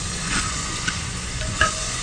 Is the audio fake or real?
fake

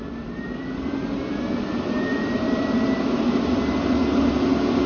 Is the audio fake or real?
fake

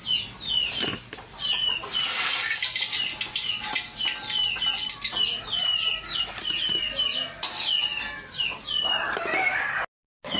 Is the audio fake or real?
real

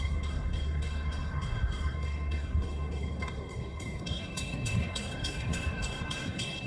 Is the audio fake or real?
fake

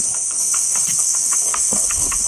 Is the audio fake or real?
fake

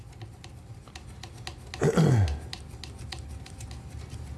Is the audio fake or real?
real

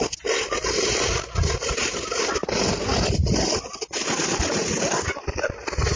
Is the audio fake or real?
real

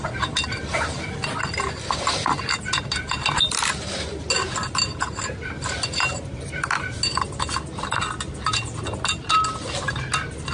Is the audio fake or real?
real